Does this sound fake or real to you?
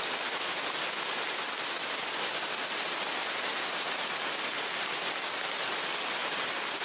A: real